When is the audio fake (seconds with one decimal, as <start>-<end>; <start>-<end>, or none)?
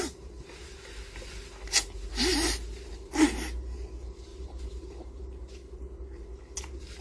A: 4.3-5.2